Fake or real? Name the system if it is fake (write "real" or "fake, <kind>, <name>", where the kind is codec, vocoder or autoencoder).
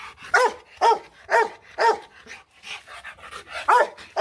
real